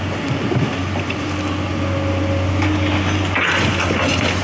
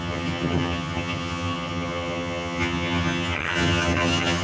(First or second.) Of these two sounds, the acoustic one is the first